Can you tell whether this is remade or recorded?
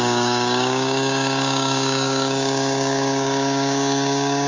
remade